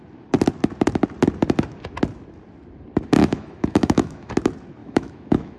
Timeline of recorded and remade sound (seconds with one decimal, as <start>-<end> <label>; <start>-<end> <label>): 0.0-3.2 recorded; 3.2-4.3 remade; 4.3-4.8 recorded; 4.8-5.6 remade